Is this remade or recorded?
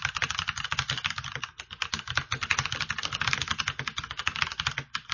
recorded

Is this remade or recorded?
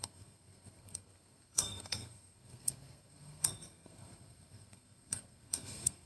remade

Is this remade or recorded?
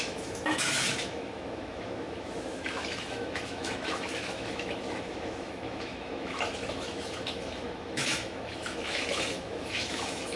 remade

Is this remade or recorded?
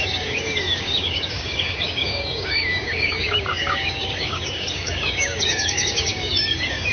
remade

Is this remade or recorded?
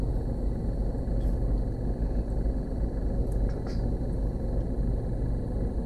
recorded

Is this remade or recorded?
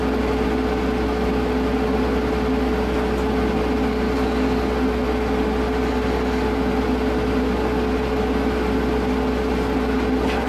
recorded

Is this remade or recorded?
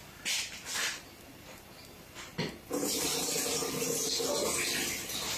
recorded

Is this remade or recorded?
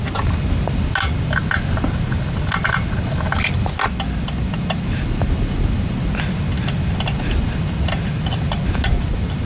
recorded